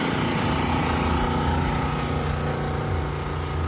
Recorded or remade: recorded